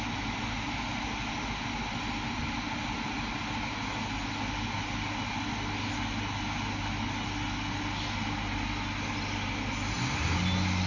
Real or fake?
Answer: real